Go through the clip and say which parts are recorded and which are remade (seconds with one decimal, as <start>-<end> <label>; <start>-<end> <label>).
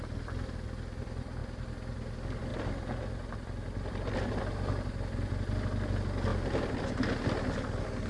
0.0-8.1 recorded